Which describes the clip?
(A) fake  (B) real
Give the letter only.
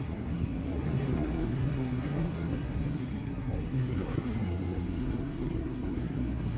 A